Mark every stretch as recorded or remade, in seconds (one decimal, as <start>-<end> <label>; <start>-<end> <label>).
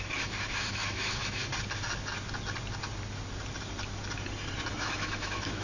0.0-1.4 remade; 1.4-4.7 recorded; 4.7-5.6 remade